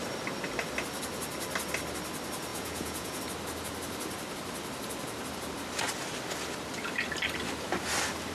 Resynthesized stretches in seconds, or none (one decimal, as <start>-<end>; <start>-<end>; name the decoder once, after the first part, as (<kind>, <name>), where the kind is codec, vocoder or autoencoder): 2.5-3.2 (vocoder, Vocos)